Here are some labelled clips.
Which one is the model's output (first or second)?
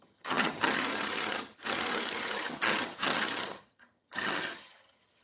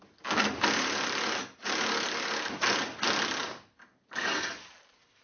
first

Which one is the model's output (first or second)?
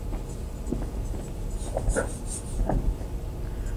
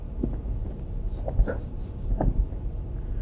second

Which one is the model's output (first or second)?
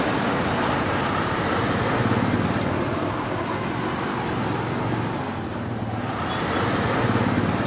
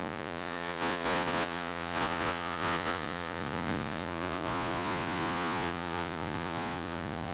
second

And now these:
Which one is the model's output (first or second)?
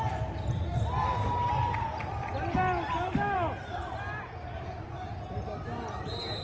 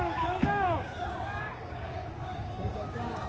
second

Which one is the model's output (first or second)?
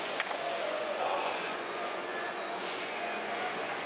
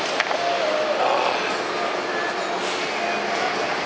first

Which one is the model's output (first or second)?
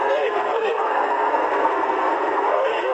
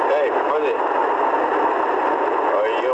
first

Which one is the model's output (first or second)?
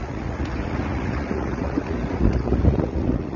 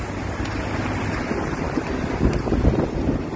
first